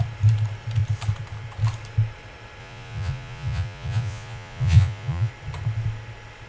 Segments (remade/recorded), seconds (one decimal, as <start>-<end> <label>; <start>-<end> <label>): 0.0-2.6 recorded; 2.6-5.3 remade; 5.3-6.5 recorded

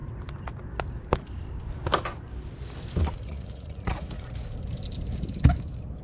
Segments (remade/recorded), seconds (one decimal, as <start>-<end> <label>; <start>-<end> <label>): 0.0-3.0 recorded; 3.0-4.3 remade; 4.3-6.0 recorded

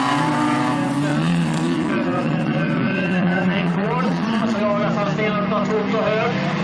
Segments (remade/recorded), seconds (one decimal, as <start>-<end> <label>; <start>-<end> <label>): 0.0-1.1 recorded; 1.1-4.6 remade; 4.6-6.6 recorded

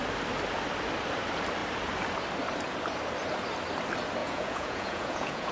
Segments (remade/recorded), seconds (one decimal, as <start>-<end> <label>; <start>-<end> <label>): 0.0-4.2 recorded; 4.2-5.5 remade

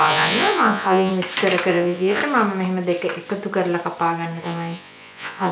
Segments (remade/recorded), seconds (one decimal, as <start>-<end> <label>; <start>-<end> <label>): 0.0-1.1 remade; 1.1-1.7 recorded; 1.7-2.2 remade; 2.2-4.4 recorded; 4.4-5.5 remade